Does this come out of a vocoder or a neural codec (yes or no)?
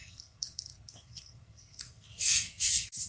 yes